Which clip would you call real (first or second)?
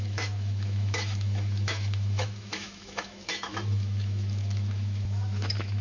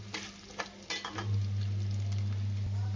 second